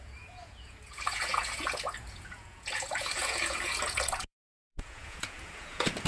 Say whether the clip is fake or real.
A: fake